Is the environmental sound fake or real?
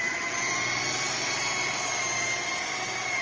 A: real